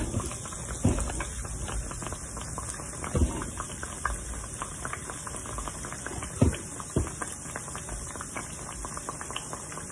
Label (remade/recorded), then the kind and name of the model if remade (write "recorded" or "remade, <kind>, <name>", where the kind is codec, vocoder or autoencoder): recorded